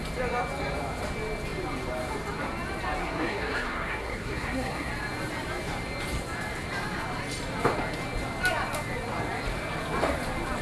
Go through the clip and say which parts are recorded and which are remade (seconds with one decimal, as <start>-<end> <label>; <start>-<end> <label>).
0.0-3.0 recorded; 3.0-4.9 remade; 4.9-10.6 recorded

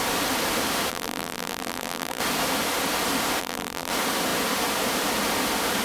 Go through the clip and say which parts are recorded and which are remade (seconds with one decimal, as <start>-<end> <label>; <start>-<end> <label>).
0.0-0.9 recorded; 0.9-2.2 remade; 2.2-3.4 recorded; 3.4-3.9 remade; 3.9-5.8 recorded

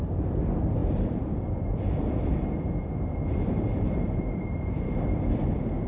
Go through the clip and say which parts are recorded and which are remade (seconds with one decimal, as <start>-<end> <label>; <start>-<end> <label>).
0.0-0.8 recorded; 0.8-1.3 remade; 1.3-3.7 recorded; 3.7-4.7 remade; 4.7-5.9 recorded

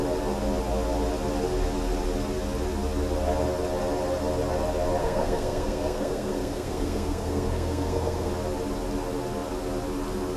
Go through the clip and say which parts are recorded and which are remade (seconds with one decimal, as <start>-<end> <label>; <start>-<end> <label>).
0.0-5.0 recorded; 5.0-8.3 remade; 8.3-10.4 recorded

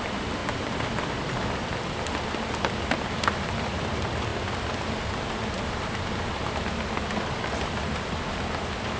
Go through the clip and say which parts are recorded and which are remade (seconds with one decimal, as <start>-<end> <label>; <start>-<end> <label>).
0.0-9.0 recorded

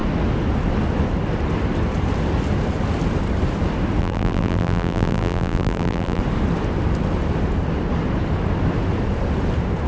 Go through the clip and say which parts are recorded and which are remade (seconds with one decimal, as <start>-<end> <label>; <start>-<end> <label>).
0.0-4.0 recorded; 4.0-6.2 remade; 6.2-9.9 recorded

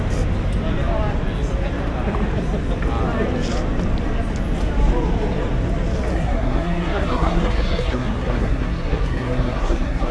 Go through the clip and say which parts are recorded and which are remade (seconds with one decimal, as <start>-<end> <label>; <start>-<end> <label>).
0.0-6.1 recorded; 6.1-10.1 remade

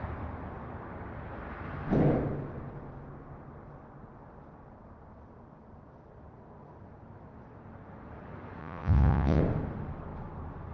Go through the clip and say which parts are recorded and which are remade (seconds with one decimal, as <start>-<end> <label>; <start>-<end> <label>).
0.0-8.6 recorded; 8.6-9.4 remade; 9.4-10.7 recorded